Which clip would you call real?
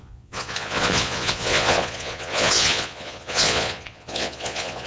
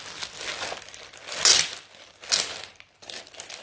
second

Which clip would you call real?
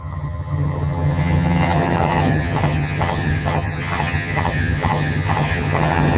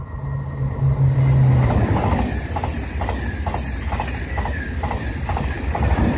second